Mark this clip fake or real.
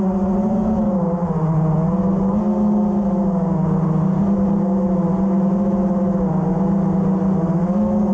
real